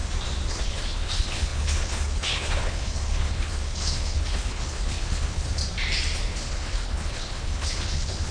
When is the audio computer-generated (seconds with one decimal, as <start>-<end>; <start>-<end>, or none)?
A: 0.5-5.6; 6.3-8.3